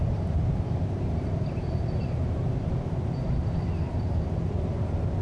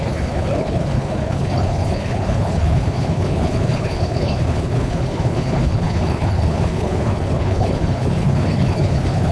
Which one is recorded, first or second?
first